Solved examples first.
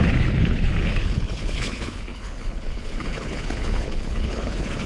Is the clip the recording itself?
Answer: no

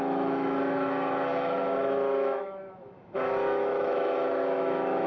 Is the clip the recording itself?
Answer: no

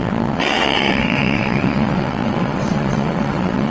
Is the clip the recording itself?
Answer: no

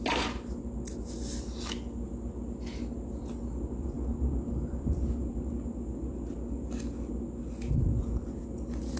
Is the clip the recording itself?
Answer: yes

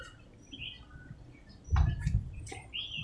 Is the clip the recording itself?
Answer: yes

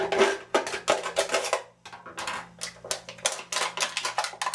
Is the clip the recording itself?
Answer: yes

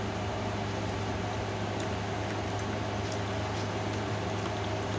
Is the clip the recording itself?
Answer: yes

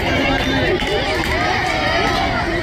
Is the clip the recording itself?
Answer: yes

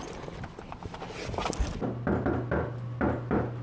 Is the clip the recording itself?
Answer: yes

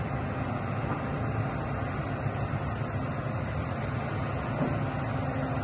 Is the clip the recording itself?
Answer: yes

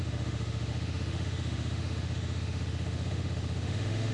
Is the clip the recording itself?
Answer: no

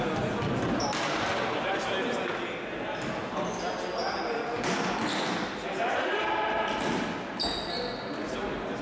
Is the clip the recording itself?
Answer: yes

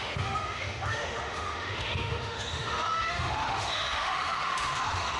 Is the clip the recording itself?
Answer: no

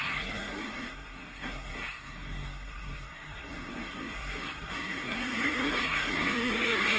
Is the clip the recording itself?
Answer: no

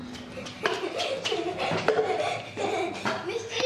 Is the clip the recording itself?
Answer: yes